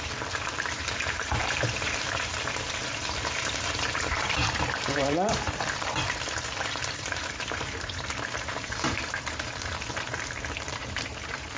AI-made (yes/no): yes